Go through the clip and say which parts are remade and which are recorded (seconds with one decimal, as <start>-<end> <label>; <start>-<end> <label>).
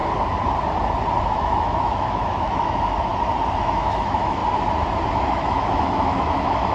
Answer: 0.0-1.2 recorded; 1.2-3.1 remade; 3.1-3.6 recorded; 3.6-4.4 remade; 4.4-5.1 recorded; 5.1-6.7 remade